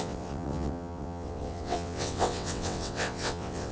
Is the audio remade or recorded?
remade